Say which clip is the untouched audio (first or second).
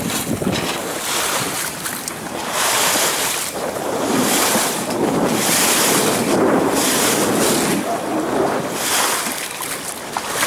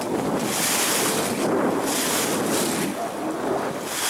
second